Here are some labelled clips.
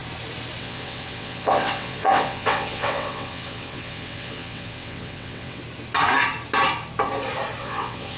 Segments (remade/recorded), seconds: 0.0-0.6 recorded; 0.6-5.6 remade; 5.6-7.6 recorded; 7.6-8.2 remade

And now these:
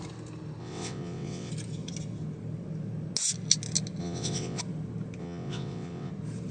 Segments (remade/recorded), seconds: 0.0-0.6 recorded; 0.6-1.5 remade; 1.5-4.0 recorded; 4.0-4.6 remade; 4.6-5.2 recorded; 5.2-6.1 remade; 6.1-6.5 recorded